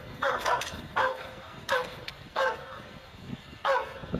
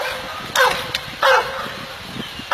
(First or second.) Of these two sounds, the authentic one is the second